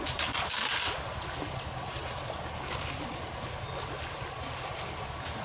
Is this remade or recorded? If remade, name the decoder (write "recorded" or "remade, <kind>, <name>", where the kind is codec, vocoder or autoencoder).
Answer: recorded